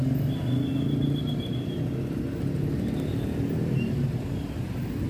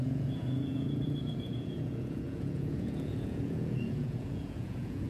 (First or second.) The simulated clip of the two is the second